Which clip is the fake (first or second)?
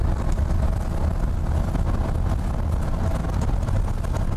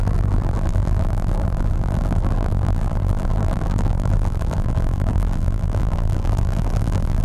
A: second